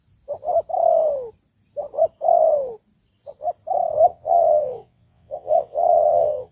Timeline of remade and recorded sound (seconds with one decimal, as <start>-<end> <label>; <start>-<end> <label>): 0.0-4.1 recorded; 4.1-6.5 remade

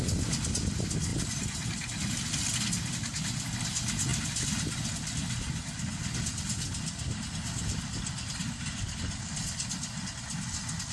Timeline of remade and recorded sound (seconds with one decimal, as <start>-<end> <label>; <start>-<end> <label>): 0.0-10.9 recorded

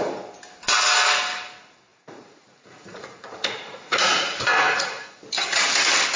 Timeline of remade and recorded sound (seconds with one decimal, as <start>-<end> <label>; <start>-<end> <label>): 0.0-1.9 recorded; 1.9-5.2 remade; 5.2-6.2 recorded

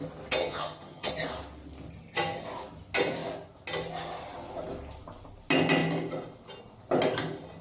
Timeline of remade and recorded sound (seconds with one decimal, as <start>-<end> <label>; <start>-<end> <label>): 0.0-0.4 recorded; 0.4-1.1 remade; 1.1-7.6 recorded